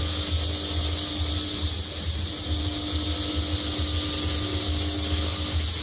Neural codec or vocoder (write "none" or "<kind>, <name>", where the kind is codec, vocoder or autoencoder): none